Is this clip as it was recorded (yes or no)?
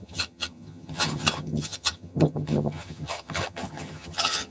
no